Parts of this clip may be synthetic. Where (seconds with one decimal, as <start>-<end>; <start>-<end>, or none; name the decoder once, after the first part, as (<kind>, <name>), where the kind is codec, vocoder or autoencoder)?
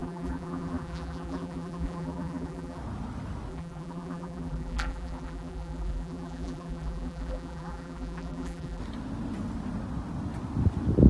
0.0-2.8 (vocoder, BigVGAN v2); 3.5-8.8